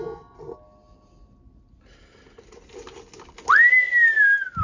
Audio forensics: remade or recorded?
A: recorded